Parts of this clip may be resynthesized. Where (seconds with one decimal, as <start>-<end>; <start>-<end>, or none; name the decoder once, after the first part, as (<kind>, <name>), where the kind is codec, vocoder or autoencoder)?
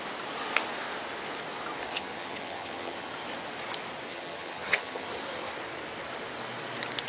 1.9-3.1 (vocoder, HiFi-GAN); 4.1-5.1